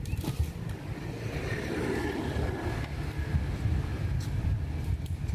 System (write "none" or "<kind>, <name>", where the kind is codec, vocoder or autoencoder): none